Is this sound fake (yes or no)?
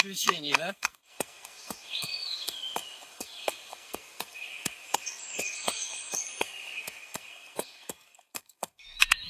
yes